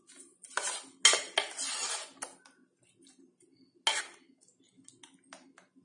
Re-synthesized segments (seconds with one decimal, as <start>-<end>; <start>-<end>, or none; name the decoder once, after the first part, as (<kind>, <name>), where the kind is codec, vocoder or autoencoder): none